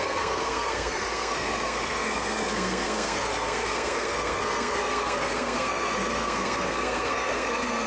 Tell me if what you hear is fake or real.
fake